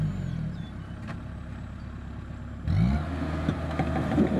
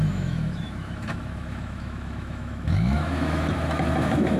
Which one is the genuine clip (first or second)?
first